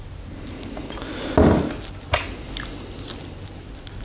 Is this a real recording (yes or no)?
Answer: yes